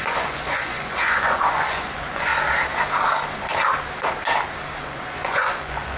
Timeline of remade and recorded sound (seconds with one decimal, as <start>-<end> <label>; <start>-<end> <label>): 0.0-2.3 remade; 2.3-4.8 recorded; 4.8-6.0 remade